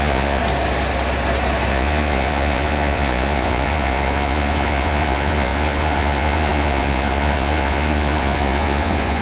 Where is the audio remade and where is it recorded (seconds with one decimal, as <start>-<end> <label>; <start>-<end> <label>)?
0.0-0.4 remade; 0.4-1.7 recorded; 1.7-9.2 remade